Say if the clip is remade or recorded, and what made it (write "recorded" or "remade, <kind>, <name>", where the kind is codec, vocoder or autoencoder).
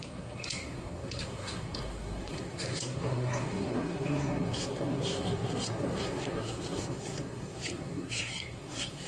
remade, codec, SNAC